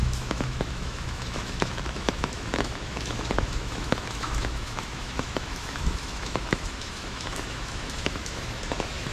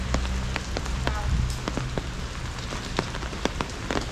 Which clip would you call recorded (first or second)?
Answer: second